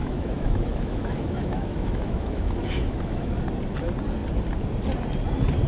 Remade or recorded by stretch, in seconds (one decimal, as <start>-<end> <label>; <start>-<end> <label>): 0.0-3.4 remade; 3.4-5.7 recorded